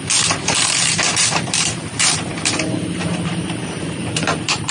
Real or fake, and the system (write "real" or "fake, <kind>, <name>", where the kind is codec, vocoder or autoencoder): fake, vocoder, BigVGAN v2